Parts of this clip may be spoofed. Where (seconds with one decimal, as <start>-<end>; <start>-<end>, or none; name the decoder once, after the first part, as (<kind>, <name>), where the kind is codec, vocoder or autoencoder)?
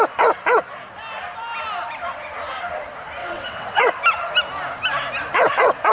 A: 3.2-3.9 (vocoder, WaveNeXt)